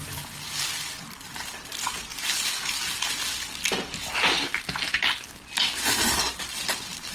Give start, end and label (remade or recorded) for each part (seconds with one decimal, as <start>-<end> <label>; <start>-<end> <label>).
0.0-2.1 remade; 2.1-6.1 recorded; 6.1-7.1 remade